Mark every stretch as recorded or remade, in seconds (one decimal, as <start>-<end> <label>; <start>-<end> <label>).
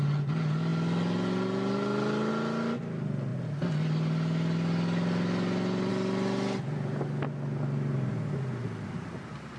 0.0-9.6 recorded